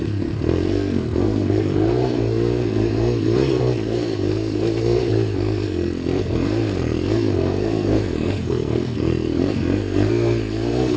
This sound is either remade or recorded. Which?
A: remade